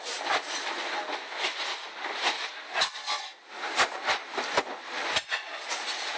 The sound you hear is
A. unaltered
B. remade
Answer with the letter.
A